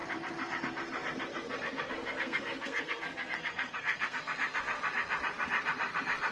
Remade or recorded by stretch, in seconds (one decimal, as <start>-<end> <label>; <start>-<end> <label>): 0.0-1.3 recorded; 1.3-4.2 remade; 4.2-6.3 recorded